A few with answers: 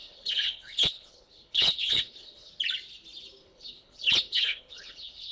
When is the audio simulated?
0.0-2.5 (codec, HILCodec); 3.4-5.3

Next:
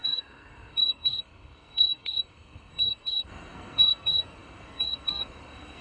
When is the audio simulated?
0.0-5.8 (codec, SNAC)

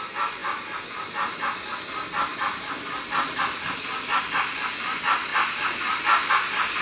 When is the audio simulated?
none

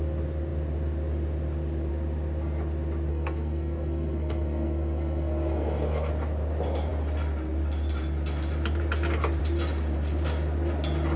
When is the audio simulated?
3.1-6.1 (codec, SNAC)

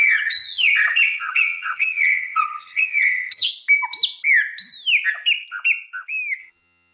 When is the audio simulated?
0.0-3.5 (vocoder, HiFi-GAN); 6.4-6.9

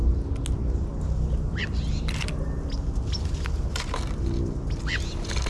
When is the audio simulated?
none

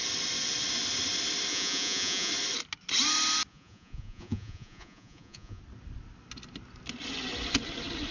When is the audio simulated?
1.5-2.3 (vocoder, Vocos); 3.5-5.6